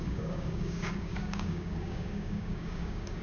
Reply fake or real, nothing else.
fake